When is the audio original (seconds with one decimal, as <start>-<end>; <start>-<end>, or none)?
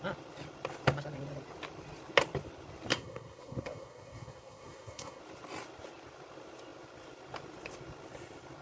0.0-2.9; 5.2-8.6